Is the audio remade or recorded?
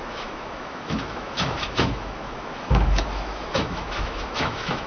remade